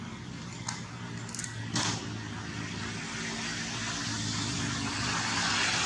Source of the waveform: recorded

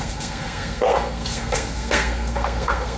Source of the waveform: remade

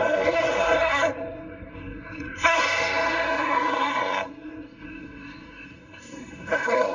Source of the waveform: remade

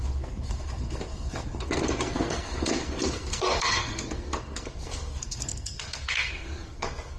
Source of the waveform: remade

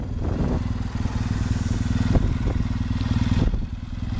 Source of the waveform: recorded